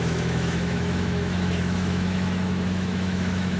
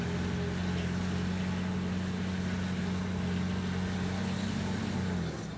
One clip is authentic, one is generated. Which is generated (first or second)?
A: first